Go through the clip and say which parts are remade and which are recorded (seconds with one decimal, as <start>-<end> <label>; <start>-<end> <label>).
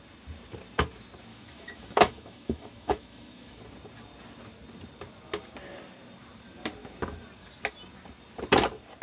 0.0-1.3 recorded; 1.3-3.6 remade; 3.6-9.0 recorded